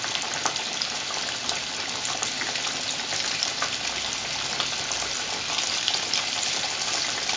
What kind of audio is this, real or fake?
fake